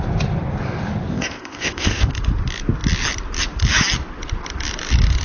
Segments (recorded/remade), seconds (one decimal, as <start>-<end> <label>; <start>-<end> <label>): 0.0-1.1 recorded; 1.1-2.1 remade; 2.1-5.2 recorded

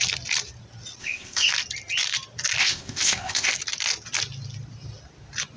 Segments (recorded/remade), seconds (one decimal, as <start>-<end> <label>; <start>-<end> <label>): 0.0-1.0 recorded; 1.0-1.5 remade; 1.5-2.6 recorded; 2.6-3.5 remade; 3.5-5.6 recorded

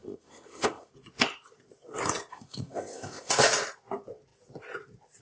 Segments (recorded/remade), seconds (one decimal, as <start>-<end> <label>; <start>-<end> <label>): 0.0-0.9 remade; 0.9-2.3 recorded; 2.3-3.3 remade; 3.3-5.2 recorded

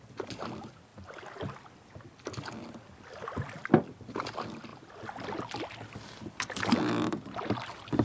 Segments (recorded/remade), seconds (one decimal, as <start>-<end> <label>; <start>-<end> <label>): 0.0-8.0 recorded

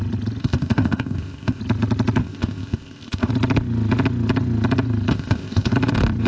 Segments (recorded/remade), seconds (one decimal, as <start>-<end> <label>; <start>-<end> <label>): 0.0-0.4 recorded; 0.4-1.6 remade; 1.6-2.2 recorded; 2.2-3.3 remade; 3.3-5.1 recorded; 5.1-5.7 remade; 5.7-6.3 recorded